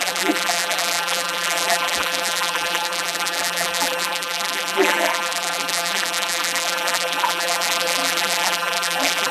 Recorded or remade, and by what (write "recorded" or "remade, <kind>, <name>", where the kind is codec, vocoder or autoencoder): remade, vocoder, BigVGAN v2